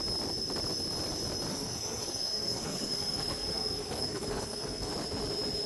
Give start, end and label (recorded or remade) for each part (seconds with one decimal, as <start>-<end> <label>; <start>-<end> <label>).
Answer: 0.0-1.5 recorded; 1.5-4.9 remade; 4.9-5.7 recorded